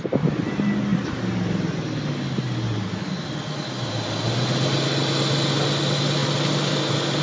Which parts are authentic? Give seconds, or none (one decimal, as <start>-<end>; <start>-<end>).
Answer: 0.0-7.2